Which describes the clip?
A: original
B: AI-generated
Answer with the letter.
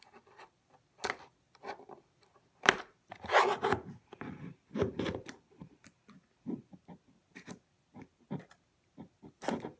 A